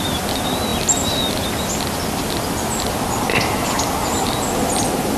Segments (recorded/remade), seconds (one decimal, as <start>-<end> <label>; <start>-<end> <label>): 0.0-5.2 recorded